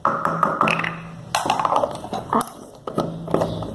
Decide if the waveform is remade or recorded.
recorded